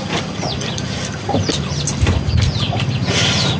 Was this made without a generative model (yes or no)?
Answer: yes